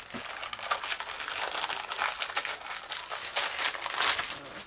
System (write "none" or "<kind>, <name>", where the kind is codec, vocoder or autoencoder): none